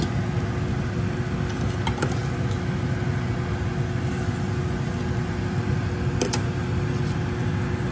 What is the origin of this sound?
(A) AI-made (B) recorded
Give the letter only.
B